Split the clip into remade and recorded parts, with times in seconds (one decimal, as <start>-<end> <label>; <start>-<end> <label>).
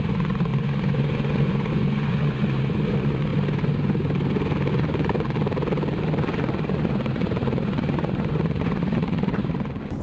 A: 0.0-3.3 remade; 3.3-4.7 recorded; 4.7-5.4 remade; 5.4-6.2 recorded; 6.2-10.0 remade